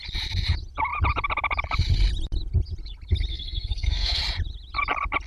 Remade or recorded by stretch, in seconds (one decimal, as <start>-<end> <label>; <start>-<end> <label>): 0.0-3.3 recorded; 3.3-4.2 remade; 4.2-5.3 recorded